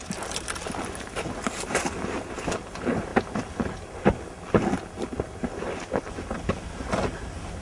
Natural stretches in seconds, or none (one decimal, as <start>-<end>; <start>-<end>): 0.0-7.6